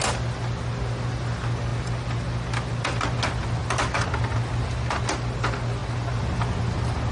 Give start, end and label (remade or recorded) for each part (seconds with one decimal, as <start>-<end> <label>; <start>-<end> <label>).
0.0-7.1 recorded